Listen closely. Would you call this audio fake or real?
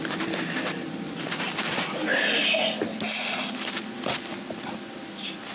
real